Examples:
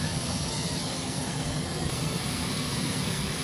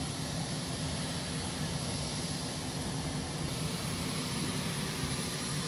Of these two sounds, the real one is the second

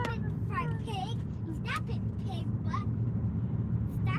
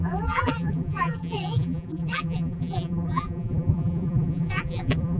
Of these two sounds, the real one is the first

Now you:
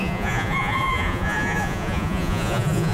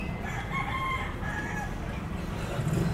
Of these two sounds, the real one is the second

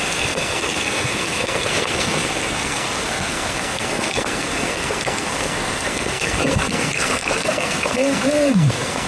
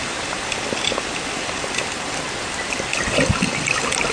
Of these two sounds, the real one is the second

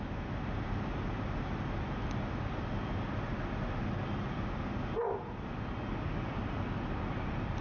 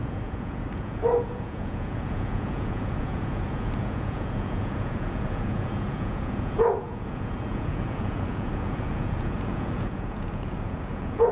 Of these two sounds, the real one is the first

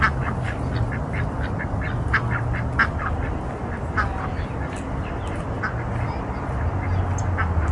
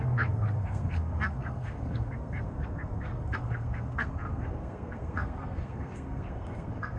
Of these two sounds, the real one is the first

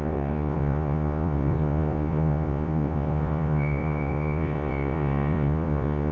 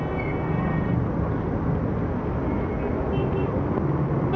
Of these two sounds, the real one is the second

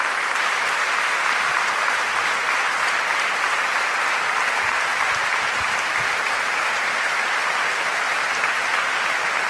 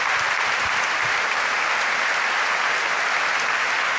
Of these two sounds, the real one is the second